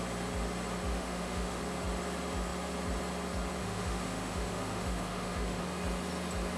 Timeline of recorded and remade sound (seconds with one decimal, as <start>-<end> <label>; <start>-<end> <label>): 0.0-0.9 recorded; 0.9-1.6 remade; 1.6-3.6 recorded; 3.6-5.6 remade; 5.6-6.6 recorded